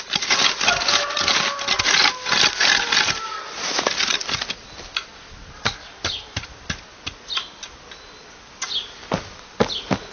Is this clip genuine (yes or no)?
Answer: yes